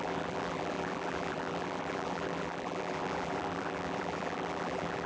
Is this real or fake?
fake